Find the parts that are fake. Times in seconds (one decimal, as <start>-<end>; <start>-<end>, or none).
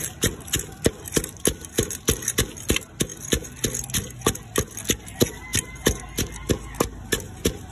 none